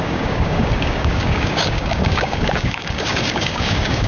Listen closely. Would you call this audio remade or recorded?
remade